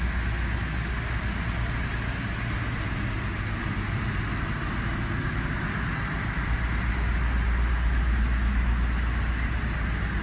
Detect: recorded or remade recorded